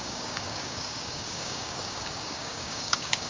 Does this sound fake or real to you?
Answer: fake